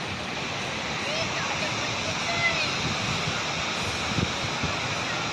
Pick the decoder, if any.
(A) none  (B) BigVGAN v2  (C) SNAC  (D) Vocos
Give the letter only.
A